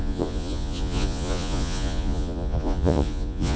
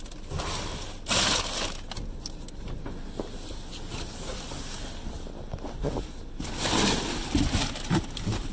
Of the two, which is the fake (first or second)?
first